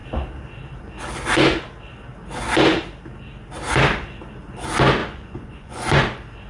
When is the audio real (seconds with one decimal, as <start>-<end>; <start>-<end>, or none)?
0.0-5.0; 6.0-6.5